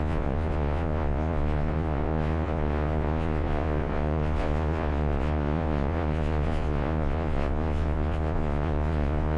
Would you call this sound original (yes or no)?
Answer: no